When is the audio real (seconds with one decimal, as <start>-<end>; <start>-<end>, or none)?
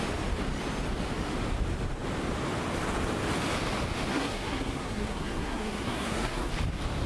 0.0-4.1; 6.5-7.1